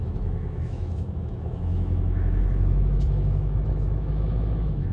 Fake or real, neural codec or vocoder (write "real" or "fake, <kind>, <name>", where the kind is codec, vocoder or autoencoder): fake, autoencoder, DAC-VAE